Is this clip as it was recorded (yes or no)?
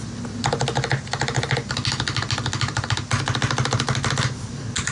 yes